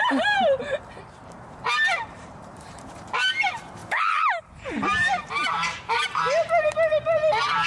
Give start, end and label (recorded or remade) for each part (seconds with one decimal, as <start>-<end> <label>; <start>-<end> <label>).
0.0-7.7 remade